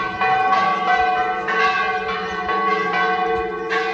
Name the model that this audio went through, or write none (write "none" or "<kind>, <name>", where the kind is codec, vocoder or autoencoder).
none